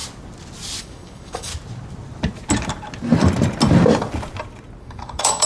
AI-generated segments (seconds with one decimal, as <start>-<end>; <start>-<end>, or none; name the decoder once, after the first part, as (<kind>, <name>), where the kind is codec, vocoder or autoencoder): 0.8-1.5 (codec, DAC); 4.8-5.5